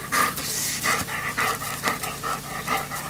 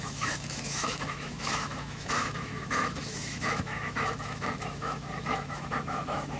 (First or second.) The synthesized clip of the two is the second